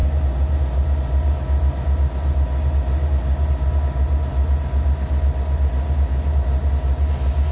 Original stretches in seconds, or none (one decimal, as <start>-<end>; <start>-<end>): 0.0-7.5